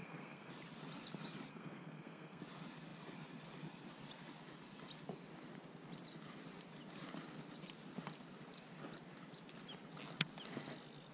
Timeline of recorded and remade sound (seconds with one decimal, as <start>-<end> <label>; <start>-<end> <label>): 0.0-0.5 remade; 0.5-1.5 recorded; 1.5-2.4 remade; 2.4-11.1 recorded